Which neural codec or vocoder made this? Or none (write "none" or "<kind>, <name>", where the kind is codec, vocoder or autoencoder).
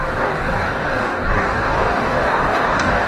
codec, DAC